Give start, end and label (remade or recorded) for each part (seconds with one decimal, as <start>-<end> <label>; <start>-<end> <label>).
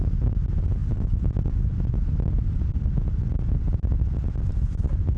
0.0-5.2 recorded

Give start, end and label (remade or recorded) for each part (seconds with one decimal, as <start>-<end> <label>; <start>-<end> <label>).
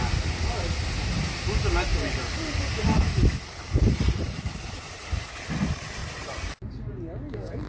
0.0-1.9 recorded; 1.9-5.2 remade; 5.2-6.0 recorded; 6.0-6.7 remade; 6.7-7.7 recorded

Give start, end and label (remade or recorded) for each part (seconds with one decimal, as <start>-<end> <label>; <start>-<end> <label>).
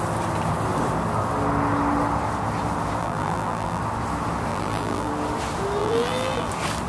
0.0-3.0 recorded; 3.0-3.8 remade; 3.8-4.5 recorded; 4.5-5.1 remade; 5.1-5.8 recorded; 5.8-6.5 remade; 6.5-6.9 recorded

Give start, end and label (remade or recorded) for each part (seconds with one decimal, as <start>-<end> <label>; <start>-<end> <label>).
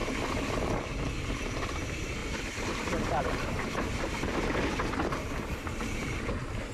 0.0-6.7 recorded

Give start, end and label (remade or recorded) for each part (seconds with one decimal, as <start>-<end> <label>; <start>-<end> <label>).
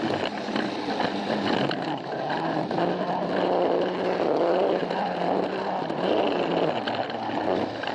0.0-7.9 recorded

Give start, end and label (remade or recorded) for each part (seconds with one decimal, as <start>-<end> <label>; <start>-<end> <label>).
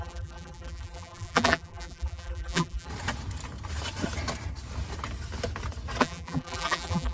0.0-2.9 remade; 2.9-6.0 recorded; 6.0-7.1 remade